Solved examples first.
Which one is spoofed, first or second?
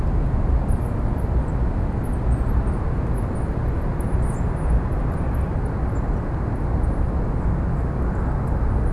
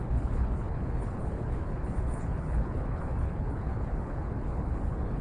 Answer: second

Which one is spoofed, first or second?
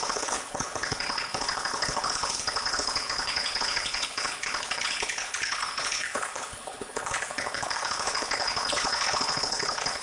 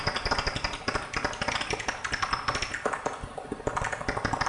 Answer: first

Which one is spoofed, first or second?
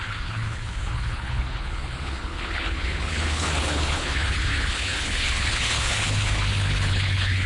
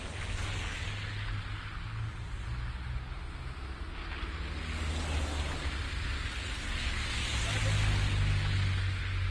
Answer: first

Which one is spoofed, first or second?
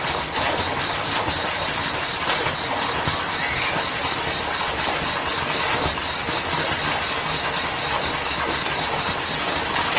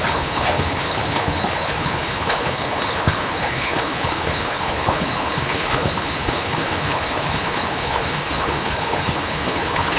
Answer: second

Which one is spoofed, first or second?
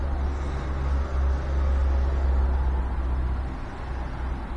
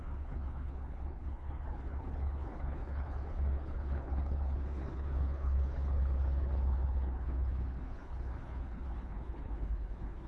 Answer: second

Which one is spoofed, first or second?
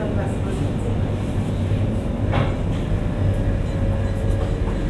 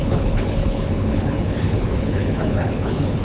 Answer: second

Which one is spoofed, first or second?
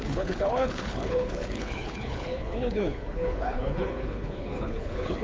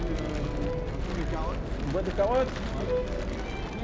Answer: first